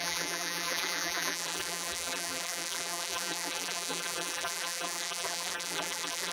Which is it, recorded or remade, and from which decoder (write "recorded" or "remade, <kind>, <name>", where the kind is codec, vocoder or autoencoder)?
remade, vocoder, BigVGAN v2